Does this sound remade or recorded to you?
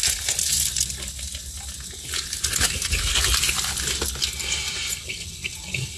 recorded